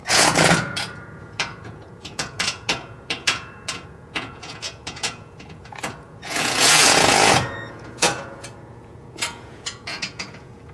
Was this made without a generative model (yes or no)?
no